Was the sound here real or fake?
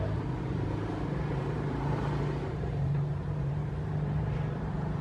fake